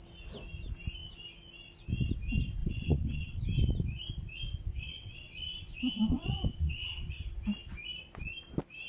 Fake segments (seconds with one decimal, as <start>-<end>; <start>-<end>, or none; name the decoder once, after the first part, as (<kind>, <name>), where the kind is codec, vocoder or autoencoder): 2.6-3.4 (vocoder, WaveNeXt); 4.7-7.1